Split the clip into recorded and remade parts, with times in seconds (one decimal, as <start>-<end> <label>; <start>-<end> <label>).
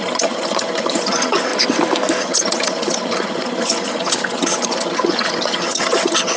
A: 0.0-1.5 remade; 1.5-2.2 recorded; 2.2-6.4 remade